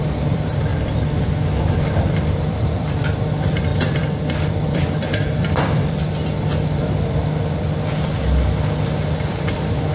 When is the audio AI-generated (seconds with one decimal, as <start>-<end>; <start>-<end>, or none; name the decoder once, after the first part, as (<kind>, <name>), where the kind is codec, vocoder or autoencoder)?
0.0-0.7 (vocoder, BigVGAN v2); 2.1-7.2; 9.3-9.9